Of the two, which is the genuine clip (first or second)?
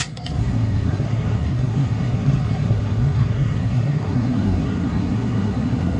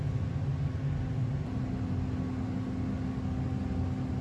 second